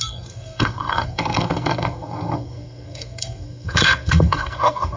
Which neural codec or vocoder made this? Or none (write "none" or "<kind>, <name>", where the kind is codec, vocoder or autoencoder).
codec, SNAC